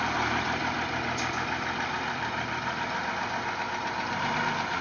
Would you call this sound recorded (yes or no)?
yes